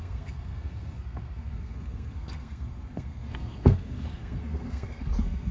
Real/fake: fake